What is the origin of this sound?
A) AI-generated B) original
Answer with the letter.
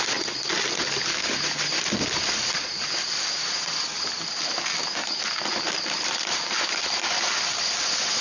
B